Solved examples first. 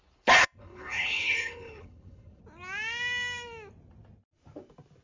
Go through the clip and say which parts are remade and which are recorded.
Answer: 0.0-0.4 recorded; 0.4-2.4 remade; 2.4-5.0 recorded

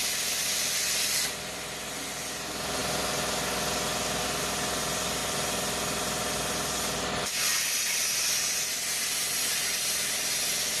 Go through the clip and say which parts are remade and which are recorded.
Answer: 0.0-10.8 recorded